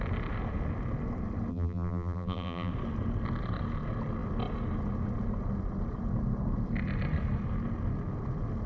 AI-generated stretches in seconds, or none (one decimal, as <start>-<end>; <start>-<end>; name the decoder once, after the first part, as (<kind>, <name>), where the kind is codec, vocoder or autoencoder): 1.5-2.7 (vocoder, BigVGAN v2)